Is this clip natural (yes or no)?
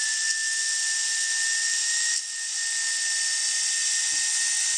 yes